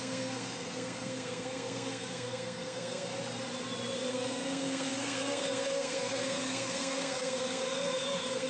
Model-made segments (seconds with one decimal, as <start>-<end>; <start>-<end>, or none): 0.0-3.1; 4.1-8.5